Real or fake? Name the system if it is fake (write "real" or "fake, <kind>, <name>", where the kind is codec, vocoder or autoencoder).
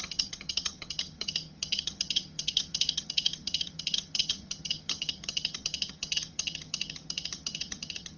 fake, vocoder, HiFi-GAN